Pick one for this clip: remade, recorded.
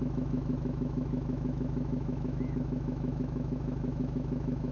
remade